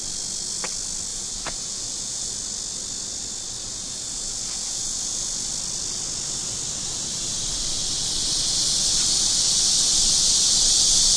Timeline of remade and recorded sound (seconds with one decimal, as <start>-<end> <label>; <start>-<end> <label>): 0.0-1.1 recorded; 1.1-2.3 remade; 2.3-3.6 recorded; 3.6-5.5 remade; 5.5-11.2 recorded